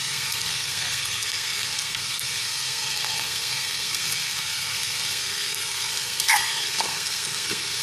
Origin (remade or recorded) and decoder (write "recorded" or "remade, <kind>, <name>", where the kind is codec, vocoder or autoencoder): remade, codec, SNAC